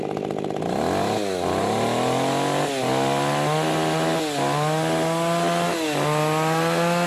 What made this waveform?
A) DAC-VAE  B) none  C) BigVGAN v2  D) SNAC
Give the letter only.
B